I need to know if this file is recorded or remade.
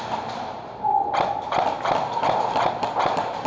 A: recorded